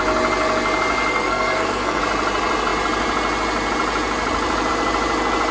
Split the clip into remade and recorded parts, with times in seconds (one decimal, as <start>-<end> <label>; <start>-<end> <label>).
0.0-1.1 recorded; 1.1-2.0 remade; 2.0-5.5 recorded